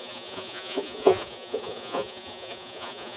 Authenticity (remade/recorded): remade